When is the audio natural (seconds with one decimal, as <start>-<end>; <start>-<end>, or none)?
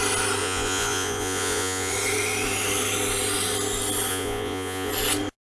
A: 0.0-0.4; 1.9-4.1; 4.9-5.5